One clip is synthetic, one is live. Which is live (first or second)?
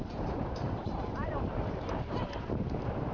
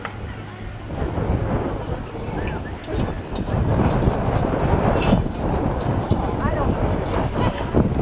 second